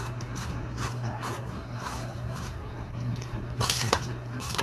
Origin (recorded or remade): remade